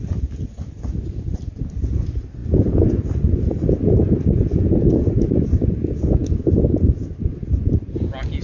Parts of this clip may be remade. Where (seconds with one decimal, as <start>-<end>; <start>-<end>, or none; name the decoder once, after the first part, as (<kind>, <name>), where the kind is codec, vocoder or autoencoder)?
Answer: none